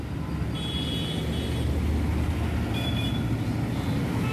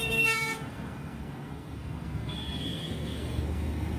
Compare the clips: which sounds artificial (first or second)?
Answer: second